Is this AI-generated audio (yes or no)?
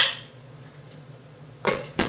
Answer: yes